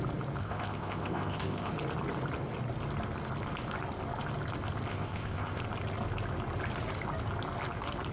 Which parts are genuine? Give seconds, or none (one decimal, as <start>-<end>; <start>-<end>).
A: 0.0-0.4; 1.7-4.9; 5.6-8.1